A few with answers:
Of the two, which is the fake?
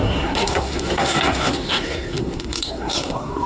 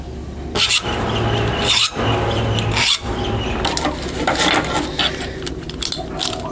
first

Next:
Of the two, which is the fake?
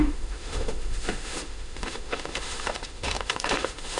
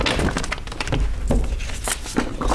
first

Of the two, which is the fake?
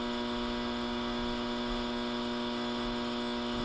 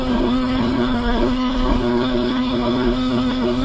second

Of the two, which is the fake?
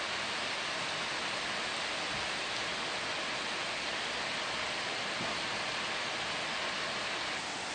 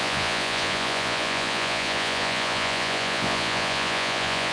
second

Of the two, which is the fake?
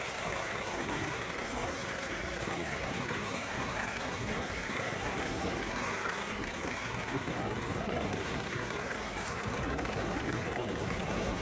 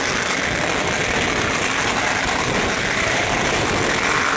first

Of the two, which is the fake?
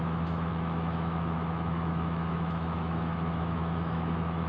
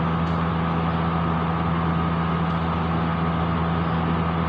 first